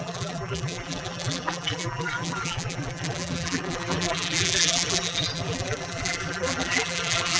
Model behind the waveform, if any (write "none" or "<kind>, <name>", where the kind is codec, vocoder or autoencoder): vocoder, BigVGAN v2